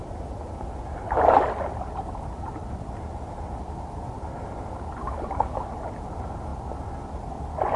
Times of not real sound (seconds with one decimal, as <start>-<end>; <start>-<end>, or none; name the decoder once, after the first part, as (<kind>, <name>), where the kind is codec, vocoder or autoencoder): 5.0-5.7 (codec, DAC)